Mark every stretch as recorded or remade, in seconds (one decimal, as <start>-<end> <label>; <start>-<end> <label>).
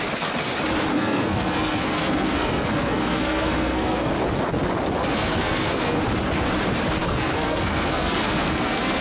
0.0-0.9 recorded; 0.9-4.1 remade; 4.1-5.0 recorded; 5.0-6.0 remade; 6.0-7.0 recorded; 7.0-9.0 remade